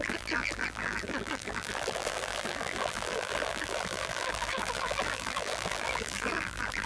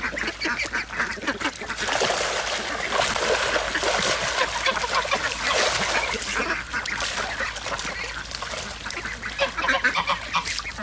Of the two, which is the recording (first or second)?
second